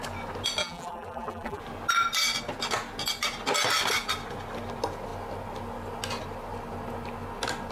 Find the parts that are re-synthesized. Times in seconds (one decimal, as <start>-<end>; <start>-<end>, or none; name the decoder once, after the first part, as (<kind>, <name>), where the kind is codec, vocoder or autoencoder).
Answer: 0.6-1.6 (vocoder, BigVGAN v2)